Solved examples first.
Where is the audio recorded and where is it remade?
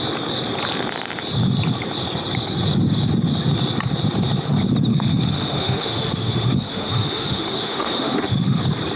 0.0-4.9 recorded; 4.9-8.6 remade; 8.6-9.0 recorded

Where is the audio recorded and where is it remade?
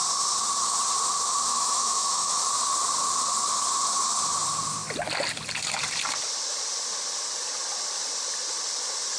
0.0-1.5 recorded; 1.5-2.5 remade; 2.5-9.2 recorded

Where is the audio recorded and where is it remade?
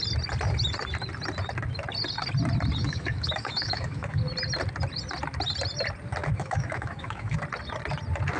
0.0-2.8 recorded; 2.8-4.2 remade; 4.2-6.2 recorded; 6.2-7.4 remade; 7.4-8.4 recorded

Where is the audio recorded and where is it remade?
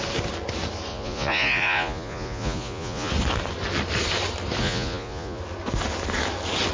0.0-0.9 recorded; 0.9-3.1 remade; 3.1-4.6 recorded; 4.6-5.4 remade; 5.4-6.7 recorded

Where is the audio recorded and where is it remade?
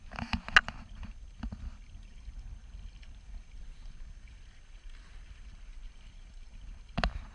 0.0-7.3 recorded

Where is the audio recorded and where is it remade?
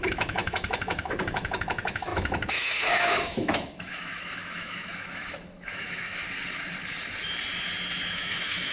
0.0-6.2 remade; 6.2-8.1 recorded; 8.1-8.7 remade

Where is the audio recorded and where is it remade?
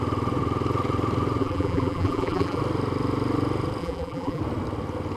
0.0-1.4 recorded; 1.4-2.6 remade; 2.6-3.8 recorded; 3.8-4.4 remade; 4.4-5.2 recorded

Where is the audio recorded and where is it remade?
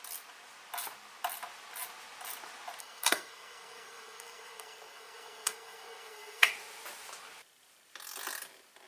0.0-2.8 recorded; 2.8-6.5 remade; 6.5-8.9 recorded